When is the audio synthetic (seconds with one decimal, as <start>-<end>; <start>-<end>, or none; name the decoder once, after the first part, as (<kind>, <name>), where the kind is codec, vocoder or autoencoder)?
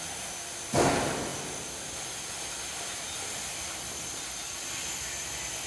none